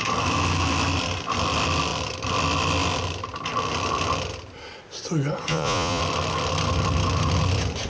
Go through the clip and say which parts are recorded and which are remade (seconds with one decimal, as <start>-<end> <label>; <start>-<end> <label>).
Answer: 0.0-5.5 recorded; 5.5-6.0 remade; 6.0-7.9 recorded